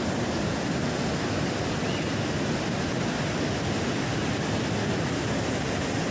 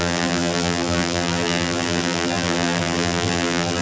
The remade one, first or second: second